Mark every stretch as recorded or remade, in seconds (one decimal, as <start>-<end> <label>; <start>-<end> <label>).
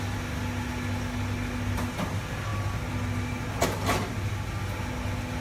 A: 0.0-5.4 recorded